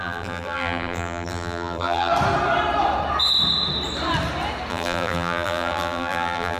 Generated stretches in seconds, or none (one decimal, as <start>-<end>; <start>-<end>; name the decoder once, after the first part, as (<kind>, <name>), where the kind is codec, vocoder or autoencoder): 0.0-2.1 (vocoder, BigVGAN v2); 4.7-6.6